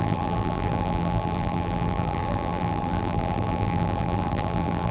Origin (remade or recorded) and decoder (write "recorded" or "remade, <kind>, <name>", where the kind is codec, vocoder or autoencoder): remade, vocoder, BigVGAN v2